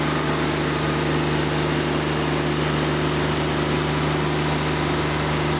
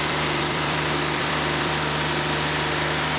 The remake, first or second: second